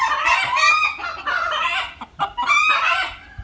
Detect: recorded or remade recorded